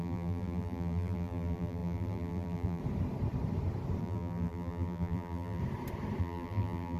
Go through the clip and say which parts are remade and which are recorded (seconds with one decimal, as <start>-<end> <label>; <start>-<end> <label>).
0.0-2.8 remade; 2.8-4.0 recorded; 4.0-5.6 remade; 5.6-6.2 recorded; 6.2-7.0 remade